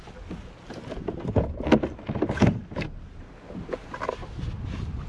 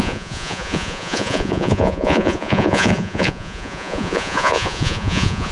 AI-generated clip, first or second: second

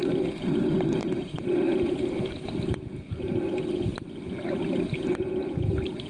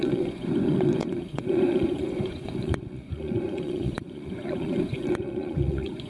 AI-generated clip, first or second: second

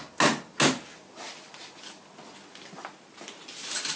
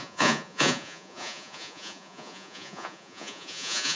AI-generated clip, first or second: second